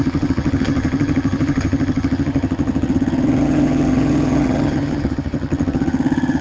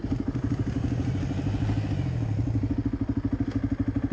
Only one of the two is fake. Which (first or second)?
first